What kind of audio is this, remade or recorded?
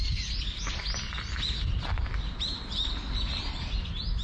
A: recorded